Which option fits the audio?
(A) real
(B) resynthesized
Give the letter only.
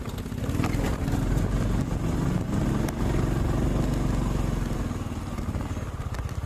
A